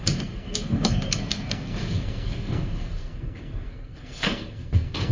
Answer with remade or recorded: remade